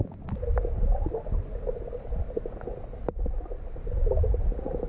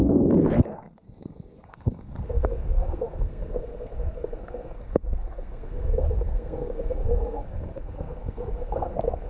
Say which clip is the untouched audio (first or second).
first